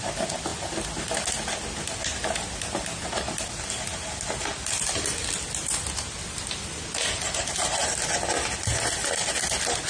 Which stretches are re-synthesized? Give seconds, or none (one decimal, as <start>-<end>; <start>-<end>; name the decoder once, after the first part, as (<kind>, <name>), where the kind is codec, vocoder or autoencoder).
none